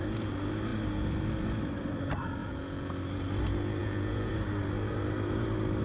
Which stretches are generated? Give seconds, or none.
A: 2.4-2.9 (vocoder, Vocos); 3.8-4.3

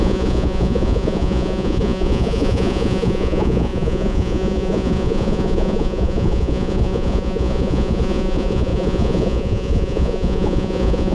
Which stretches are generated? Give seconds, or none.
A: 0.0-11.1 (vocoder, Vocos)

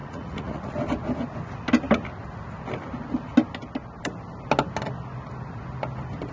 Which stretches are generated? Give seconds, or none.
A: 0.0-0.7 (vocoder, Vocos)

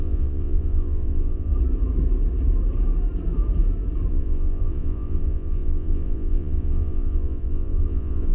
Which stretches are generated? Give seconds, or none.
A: 0.0-1.5 (vocoder, Vocos); 4.1-8.3